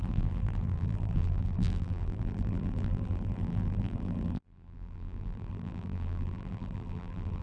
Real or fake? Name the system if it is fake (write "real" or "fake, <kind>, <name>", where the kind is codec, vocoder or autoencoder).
fake, vocoder, BigVGAN v2